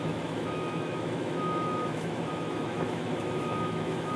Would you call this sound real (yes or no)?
no